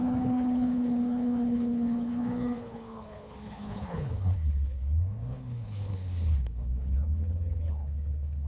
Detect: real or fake fake